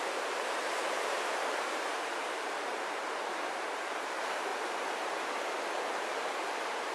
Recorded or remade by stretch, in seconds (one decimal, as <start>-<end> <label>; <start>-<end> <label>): 0.0-4.5 remade; 4.5-6.2 recorded; 6.2-6.9 remade